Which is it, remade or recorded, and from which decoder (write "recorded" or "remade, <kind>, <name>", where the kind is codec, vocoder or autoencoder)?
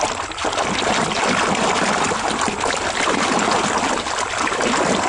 recorded